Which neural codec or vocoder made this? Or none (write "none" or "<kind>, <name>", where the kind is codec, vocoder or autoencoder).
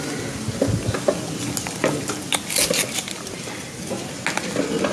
none